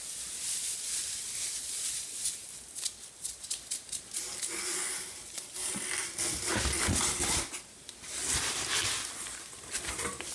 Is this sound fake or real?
real